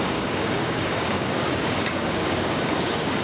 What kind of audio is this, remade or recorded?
remade